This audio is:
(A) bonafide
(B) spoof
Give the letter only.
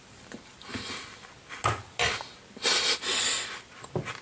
A